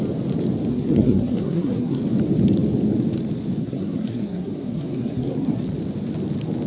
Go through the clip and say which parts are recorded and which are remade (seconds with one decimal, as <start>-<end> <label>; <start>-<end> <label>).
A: 0.0-0.7 recorded; 0.7-2.0 remade; 2.0-3.6 recorded; 3.6-5.6 remade; 5.6-6.7 recorded